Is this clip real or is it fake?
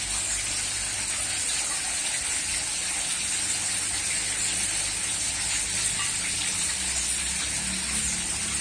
real